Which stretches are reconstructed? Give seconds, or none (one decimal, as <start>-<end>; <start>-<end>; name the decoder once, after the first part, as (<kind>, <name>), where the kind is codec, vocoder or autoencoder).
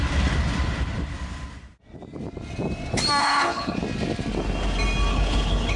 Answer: 3.2-3.8 (codec, HILCodec); 5.1-5.8